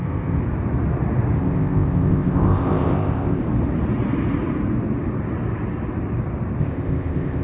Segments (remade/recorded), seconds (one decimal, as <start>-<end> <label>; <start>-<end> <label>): 0.0-0.4 remade; 0.4-1.4 recorded; 1.4-3.4 remade; 3.4-6.6 recorded; 6.6-7.4 remade